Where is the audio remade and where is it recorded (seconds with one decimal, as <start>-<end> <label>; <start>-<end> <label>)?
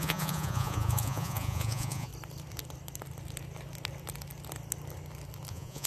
0.0-2.1 remade; 2.1-5.5 recorded; 5.5-5.9 remade